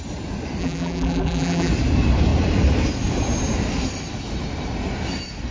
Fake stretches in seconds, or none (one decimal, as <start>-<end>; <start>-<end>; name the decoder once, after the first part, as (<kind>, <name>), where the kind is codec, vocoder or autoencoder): 0.6-1.7 (vocoder, BigVGAN v2)